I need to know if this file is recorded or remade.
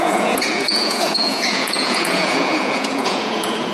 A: remade